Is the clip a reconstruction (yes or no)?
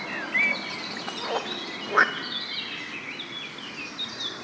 no